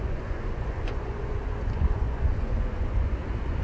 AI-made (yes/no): yes